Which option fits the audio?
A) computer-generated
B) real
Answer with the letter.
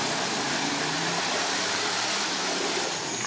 A